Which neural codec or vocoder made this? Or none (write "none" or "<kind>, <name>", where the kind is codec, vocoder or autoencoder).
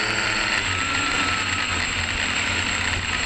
none